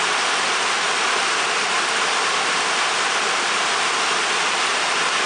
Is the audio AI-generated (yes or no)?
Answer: no